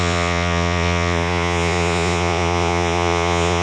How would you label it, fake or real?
fake